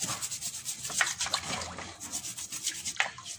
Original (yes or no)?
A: yes